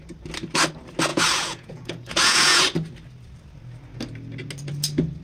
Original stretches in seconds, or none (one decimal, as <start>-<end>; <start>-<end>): 0.0-1.1; 2.6-5.2